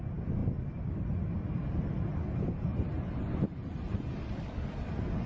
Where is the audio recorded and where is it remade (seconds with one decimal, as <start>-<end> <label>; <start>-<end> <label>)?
0.0-5.3 recorded